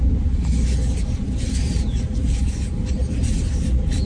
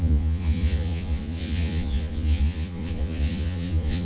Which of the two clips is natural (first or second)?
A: first